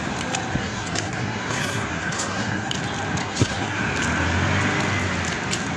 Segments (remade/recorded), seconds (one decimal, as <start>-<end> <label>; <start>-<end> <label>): 0.0-0.6 recorded; 0.6-2.7 remade; 2.7-3.2 recorded; 3.2-3.8 remade; 3.8-5.8 recorded